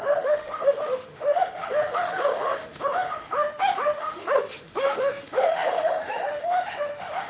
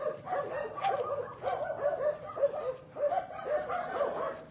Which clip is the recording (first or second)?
second